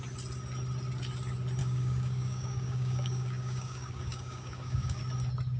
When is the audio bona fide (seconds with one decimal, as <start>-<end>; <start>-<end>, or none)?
0.0-1.6; 5.0-5.6

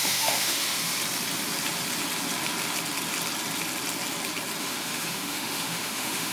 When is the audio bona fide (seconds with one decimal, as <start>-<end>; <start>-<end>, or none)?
0.9-4.6

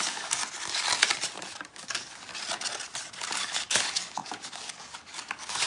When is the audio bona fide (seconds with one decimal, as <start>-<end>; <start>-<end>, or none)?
0.4-1.7; 2.3-3.2

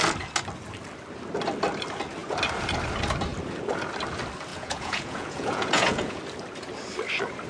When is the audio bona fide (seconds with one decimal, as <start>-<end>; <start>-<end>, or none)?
0.0-4.5; 6.2-7.5